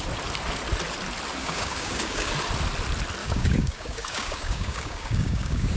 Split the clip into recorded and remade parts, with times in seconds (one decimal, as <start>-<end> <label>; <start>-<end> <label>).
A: 0.0-1.4 recorded; 1.4-2.3 remade; 2.3-3.2 recorded; 3.2-5.8 remade